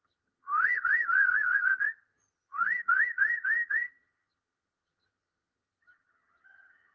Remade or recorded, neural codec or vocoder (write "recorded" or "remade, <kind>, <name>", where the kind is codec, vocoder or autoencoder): remade, vocoder, HiFi-GAN